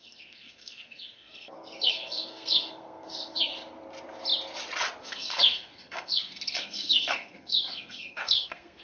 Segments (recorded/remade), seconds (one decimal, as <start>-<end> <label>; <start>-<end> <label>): 0.0-3.5 remade; 3.5-5.0 recorded; 5.0-8.8 remade